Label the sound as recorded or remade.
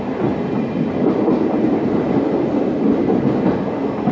recorded